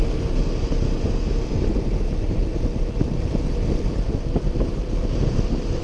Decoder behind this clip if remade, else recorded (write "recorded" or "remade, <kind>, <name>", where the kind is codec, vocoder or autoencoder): recorded